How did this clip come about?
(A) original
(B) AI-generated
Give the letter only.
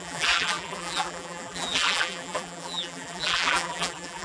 B